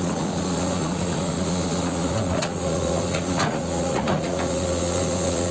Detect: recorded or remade remade